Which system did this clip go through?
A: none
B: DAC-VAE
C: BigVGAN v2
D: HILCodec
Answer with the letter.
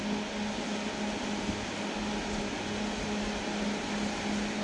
A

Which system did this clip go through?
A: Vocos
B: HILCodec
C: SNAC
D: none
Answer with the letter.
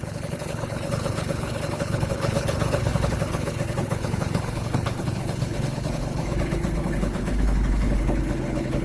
B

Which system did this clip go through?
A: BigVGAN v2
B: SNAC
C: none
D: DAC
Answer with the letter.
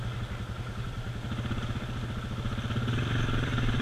C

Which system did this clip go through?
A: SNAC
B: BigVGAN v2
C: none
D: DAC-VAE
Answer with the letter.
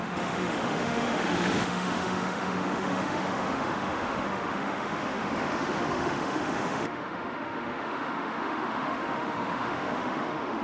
D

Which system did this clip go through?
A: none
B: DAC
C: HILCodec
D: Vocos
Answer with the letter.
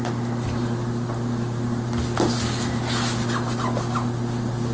A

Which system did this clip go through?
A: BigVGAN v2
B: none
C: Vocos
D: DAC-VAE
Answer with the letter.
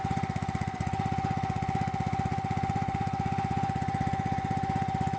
B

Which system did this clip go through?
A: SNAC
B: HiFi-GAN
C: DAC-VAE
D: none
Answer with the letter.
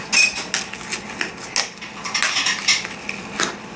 D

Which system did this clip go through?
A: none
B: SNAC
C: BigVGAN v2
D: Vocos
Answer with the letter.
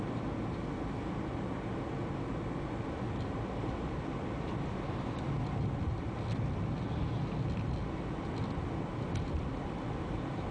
A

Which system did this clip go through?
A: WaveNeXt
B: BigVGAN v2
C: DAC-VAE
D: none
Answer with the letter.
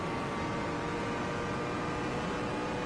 D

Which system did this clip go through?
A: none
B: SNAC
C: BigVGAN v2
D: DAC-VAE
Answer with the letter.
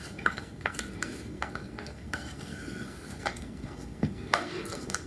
B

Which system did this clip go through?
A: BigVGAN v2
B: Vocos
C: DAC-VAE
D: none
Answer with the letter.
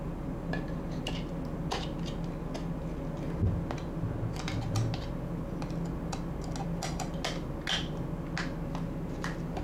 D